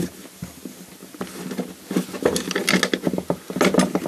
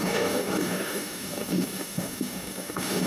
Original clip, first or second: first